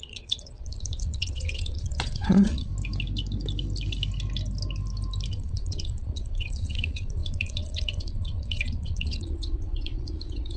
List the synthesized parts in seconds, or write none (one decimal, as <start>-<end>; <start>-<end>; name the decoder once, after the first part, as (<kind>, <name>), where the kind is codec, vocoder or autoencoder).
0.0-2.7 (vocoder, Vocos); 5.3-10.6